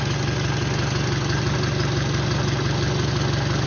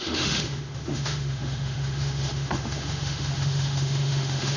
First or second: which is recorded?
first